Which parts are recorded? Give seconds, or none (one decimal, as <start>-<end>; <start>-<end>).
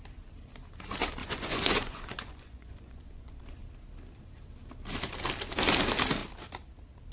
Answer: 0.0-1.2; 3.4-7.1